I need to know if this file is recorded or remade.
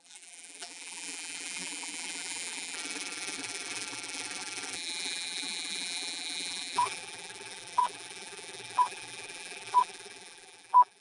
remade